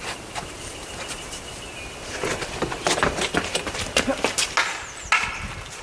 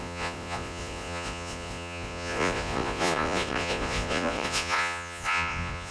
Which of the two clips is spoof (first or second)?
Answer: second